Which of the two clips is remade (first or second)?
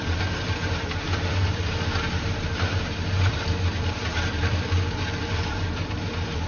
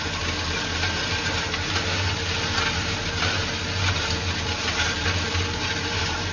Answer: first